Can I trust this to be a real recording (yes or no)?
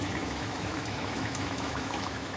no